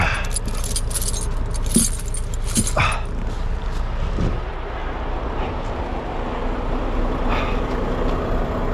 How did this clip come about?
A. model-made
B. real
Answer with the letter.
B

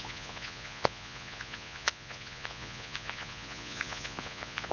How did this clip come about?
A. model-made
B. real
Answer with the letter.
A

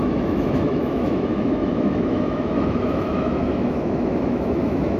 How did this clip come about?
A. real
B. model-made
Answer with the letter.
B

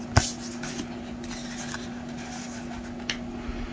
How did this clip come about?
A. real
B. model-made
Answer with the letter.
A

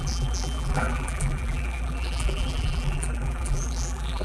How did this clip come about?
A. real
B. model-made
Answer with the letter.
B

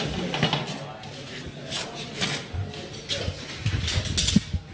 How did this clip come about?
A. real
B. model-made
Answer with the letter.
A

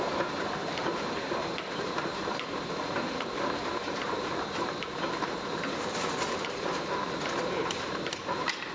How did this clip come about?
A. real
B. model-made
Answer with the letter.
B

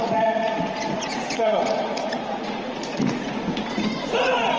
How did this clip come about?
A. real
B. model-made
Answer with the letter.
B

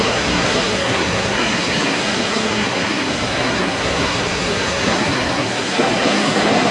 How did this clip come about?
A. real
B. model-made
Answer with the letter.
B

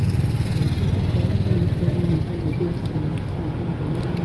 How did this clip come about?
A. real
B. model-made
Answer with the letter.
A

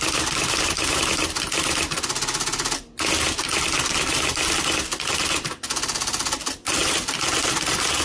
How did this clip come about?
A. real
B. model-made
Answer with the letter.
A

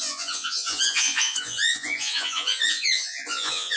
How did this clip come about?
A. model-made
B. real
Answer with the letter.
A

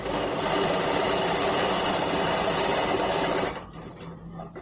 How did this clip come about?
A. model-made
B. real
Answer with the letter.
B